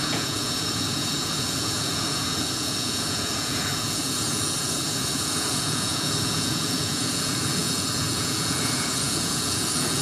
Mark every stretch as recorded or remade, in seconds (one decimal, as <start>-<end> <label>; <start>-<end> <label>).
0.0-10.0 remade